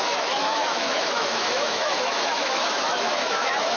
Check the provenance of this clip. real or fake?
fake